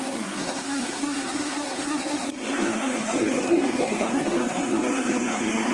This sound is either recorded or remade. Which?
remade